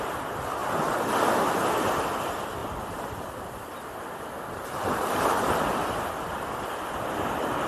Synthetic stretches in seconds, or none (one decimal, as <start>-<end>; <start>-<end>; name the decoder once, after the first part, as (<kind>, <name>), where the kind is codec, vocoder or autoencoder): 2.6-6.1 (vocoder, BigVGAN v2)